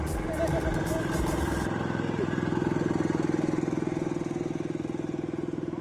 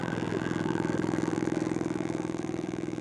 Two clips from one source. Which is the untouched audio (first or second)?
first